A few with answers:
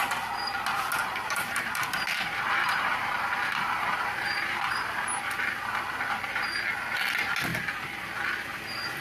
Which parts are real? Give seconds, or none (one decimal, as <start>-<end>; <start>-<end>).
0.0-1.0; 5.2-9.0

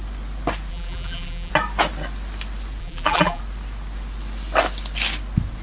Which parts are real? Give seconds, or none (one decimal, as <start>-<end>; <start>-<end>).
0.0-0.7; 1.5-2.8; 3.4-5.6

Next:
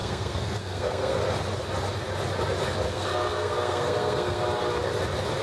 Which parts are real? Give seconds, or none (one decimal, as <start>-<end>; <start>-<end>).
1.2-2.9; 4.4-5.4

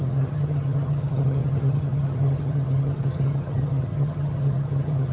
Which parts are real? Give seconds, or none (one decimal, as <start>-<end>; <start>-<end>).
none

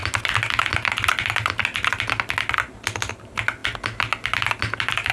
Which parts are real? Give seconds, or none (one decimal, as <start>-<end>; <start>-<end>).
0.0-5.1

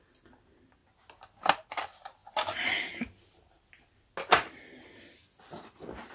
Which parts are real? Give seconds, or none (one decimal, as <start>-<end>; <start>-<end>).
0.8-1.7; 2.2-4.7